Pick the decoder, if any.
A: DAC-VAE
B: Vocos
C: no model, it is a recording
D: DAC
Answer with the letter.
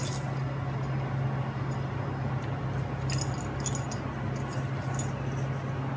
C